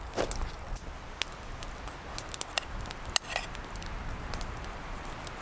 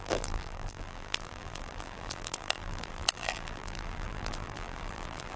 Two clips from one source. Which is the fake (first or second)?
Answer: second